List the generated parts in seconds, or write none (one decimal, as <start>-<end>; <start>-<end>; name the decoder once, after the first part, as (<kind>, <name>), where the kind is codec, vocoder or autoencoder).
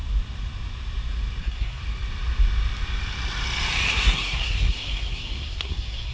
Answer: 1.4-1.8 (codec, SNAC); 3.9-6.1